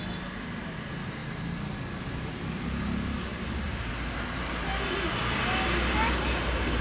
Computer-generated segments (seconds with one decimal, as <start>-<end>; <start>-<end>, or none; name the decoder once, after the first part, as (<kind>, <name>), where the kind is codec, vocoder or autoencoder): 3.3-3.9 (vocoder, BigVGAN v2)